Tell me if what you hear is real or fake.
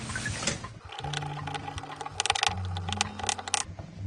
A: real